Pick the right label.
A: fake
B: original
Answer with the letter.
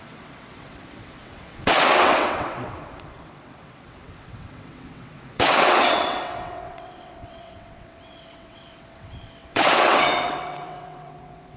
A